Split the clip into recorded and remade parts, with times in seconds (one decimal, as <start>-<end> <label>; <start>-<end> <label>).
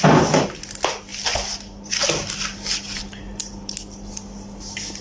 0.0-1.1 recorded; 1.1-4.1 remade; 4.1-5.0 recorded